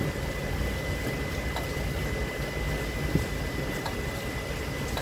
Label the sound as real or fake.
real